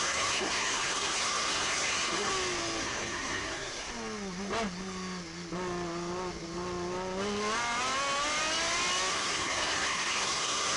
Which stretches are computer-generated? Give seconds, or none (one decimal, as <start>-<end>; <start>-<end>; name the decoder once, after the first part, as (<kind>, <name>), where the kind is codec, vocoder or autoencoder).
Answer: 0.0-2.3 (codec, SNAC); 2.8-3.9; 9.1-10.8